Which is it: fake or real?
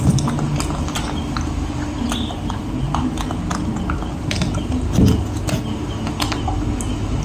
real